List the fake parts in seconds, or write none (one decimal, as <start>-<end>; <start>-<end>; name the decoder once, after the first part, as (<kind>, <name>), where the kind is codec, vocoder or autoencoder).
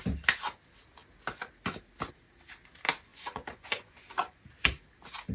3.1-4.4 (vocoder, Vocos)